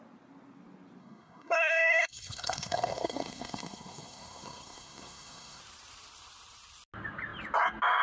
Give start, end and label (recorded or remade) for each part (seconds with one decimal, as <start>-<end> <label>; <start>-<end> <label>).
0.0-1.0 recorded; 1.0-5.6 remade; 5.6-8.0 recorded